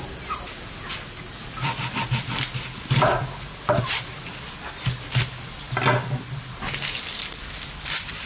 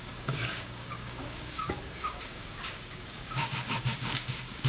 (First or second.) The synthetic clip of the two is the second